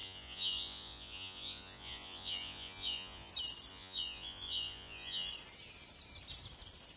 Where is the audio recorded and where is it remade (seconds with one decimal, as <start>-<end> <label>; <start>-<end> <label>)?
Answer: 0.0-3.3 remade; 3.3-3.7 recorded; 3.7-5.3 remade; 5.3-7.0 recorded